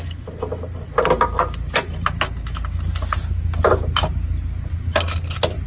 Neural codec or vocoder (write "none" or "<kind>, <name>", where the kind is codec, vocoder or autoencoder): none